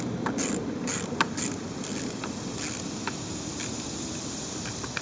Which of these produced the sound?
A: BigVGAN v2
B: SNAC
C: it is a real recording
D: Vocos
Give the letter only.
C